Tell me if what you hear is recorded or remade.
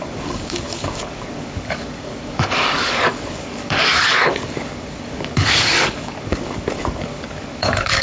remade